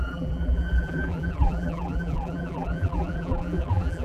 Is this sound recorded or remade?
remade